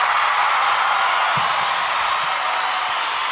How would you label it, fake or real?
real